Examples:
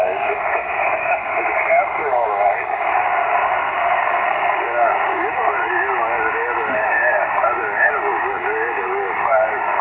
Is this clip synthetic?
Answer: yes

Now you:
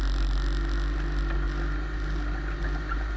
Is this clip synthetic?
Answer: no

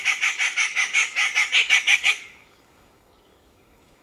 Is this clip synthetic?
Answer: yes